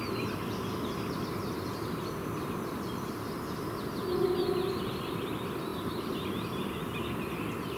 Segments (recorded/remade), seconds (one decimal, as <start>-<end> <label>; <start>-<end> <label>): 0.0-7.8 recorded